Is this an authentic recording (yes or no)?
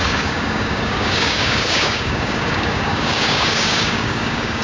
no